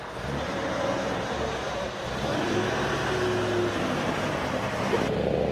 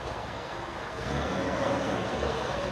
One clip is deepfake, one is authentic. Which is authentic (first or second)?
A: first